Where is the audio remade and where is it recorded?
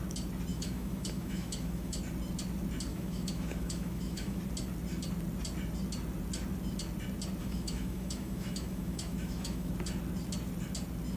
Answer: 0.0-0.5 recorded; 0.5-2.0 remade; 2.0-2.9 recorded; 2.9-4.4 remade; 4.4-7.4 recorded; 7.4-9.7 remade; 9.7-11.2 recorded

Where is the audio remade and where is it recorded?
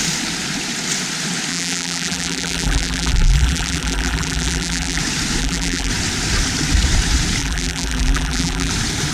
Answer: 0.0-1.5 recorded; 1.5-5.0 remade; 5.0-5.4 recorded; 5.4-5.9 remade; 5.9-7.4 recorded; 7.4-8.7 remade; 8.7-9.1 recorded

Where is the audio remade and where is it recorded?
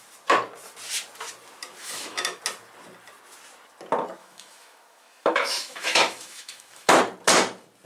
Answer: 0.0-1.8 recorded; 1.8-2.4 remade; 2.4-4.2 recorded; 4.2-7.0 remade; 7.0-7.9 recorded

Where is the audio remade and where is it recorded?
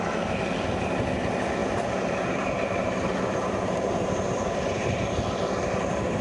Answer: 0.0-1.6 recorded; 1.6-5.2 remade; 5.2-6.2 recorded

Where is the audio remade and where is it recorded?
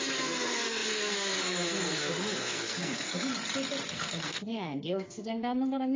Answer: 0.0-3.3 remade; 3.3-3.9 recorded; 3.9-6.0 remade